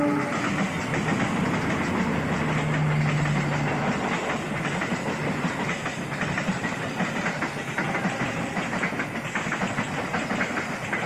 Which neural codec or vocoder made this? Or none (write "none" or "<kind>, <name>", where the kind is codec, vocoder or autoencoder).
none